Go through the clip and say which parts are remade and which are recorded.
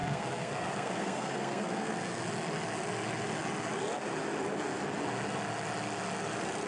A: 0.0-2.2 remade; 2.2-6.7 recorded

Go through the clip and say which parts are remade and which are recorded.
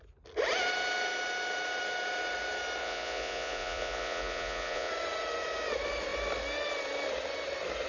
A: 0.0-2.8 recorded; 2.8-4.9 remade; 4.9-7.9 recorded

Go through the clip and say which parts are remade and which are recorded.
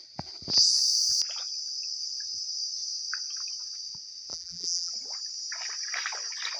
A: 0.0-4.3 recorded; 4.3-4.9 remade; 4.9-6.6 recorded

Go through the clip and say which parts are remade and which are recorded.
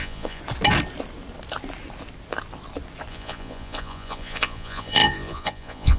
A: 0.0-0.4 remade; 0.4-3.1 recorded; 3.1-6.0 remade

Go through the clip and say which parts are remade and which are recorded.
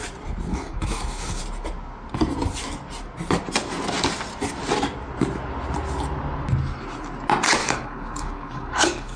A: 0.0-0.5 recorded; 0.5-1.4 remade; 1.4-7.6 recorded; 7.6-9.2 remade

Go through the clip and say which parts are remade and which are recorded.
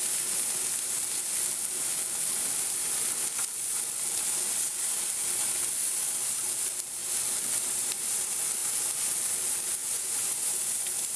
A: 0.0-9.8 recorded; 9.8-10.5 remade; 10.5-11.2 recorded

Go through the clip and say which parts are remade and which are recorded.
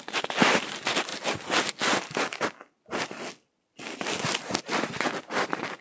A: 0.0-5.8 recorded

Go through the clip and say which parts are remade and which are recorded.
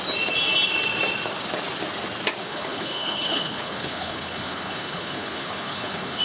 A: 0.0-2.4 recorded; 2.4-6.2 remade